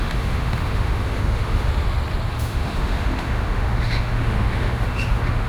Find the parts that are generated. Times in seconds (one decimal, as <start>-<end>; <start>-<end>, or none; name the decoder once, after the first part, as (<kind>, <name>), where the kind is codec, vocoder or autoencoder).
0.0-1.7 (autoencoder, DAC-VAE); 2.3-5.5